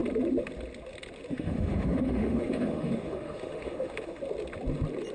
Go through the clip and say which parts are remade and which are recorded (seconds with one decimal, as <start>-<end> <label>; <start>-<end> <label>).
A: 0.0-1.3 recorded; 1.3-4.2 remade; 4.2-5.1 recorded